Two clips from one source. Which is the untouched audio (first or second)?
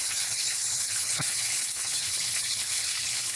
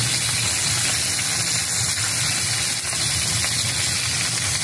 second